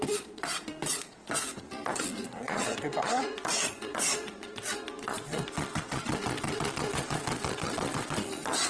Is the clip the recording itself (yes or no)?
no